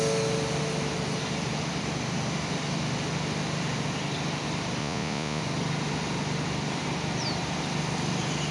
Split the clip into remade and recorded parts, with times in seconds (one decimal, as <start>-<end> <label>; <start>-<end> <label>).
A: 0.0-4.8 recorded; 4.8-5.4 remade; 5.4-8.5 recorded